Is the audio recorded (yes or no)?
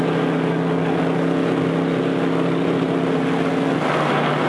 yes